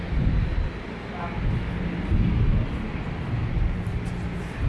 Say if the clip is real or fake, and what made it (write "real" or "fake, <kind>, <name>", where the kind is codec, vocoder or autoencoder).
real